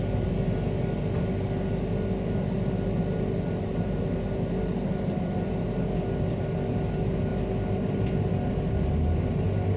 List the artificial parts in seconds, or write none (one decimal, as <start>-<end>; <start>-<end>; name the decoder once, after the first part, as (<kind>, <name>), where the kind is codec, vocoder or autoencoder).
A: none